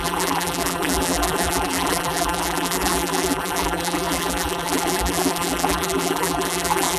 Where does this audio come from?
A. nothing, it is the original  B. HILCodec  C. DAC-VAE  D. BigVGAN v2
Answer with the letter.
D